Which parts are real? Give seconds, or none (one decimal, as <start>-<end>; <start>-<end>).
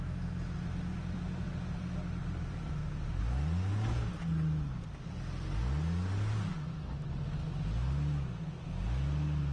0.0-0.9; 1.8-2.2; 3.2-9.5